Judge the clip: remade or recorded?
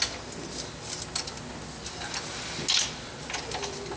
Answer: recorded